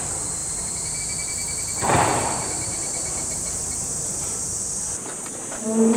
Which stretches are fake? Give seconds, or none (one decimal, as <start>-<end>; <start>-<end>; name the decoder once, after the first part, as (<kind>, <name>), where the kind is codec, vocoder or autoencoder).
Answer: 0.4-1.0 (vocoder, BigVGAN v2); 2.1-4.6